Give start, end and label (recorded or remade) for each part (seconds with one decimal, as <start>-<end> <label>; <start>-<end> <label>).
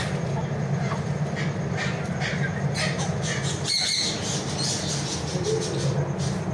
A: 0.0-6.5 recorded